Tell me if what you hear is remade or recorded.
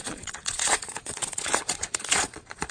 remade